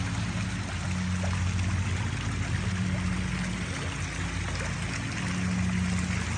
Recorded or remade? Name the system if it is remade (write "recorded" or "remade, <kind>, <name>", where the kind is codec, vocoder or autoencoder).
recorded